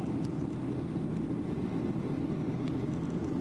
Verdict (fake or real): real